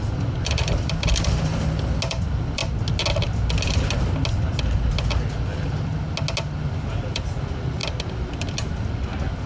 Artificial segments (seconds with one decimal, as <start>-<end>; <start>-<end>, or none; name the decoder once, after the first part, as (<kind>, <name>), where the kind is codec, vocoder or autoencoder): 0.0-1.5 (vocoder, BigVGAN v2); 2.1-2.6; 7.1-7.8